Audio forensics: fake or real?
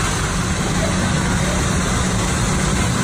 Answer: real